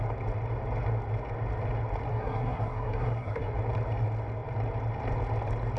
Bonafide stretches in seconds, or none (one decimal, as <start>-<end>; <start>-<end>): 0.0-2.1; 3.5-5.8

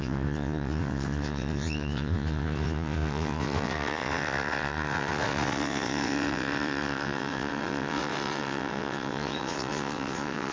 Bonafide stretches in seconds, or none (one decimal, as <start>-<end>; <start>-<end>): none

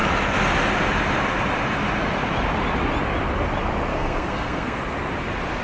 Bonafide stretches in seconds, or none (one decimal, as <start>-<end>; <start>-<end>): 0.0-3.9; 4.8-5.6

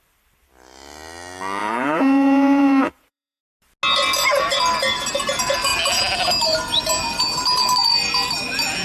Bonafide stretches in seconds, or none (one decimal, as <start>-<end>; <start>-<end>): 0.0-1.6; 3.4-8.8

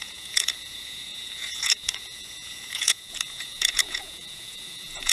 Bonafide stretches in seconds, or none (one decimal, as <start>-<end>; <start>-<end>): none